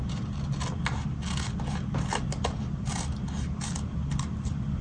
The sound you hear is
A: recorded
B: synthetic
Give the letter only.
A